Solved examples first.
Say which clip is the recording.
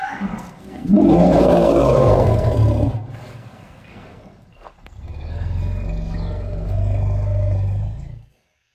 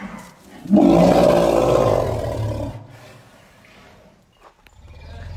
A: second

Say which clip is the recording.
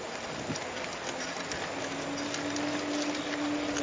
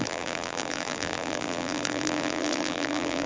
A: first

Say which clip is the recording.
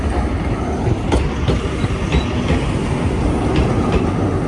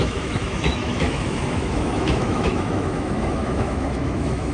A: first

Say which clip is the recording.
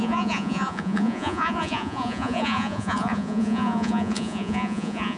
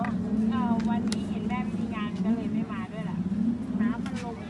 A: second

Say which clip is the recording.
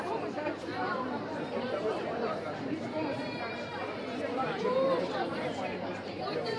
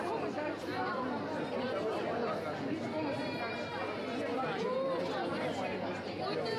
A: second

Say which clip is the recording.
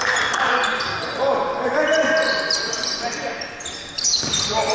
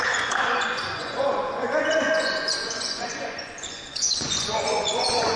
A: first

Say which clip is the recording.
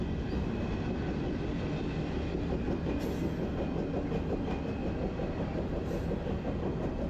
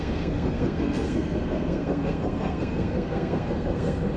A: first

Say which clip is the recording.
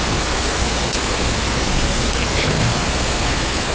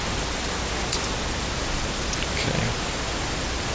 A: second